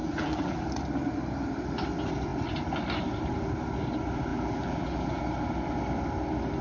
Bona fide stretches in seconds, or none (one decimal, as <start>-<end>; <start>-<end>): 0.6-4.3; 5.2-6.6